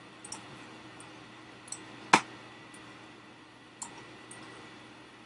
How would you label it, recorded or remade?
recorded